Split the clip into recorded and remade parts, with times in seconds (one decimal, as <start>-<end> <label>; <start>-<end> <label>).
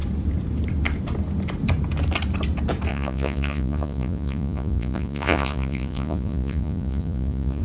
0.0-2.9 recorded; 2.9-7.6 remade